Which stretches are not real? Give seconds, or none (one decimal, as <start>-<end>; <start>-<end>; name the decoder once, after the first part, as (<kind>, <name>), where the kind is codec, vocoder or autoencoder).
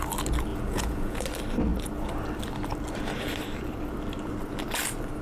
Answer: 0.5-1.2 (vocoder, Vocos)